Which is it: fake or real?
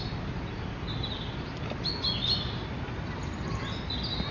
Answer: real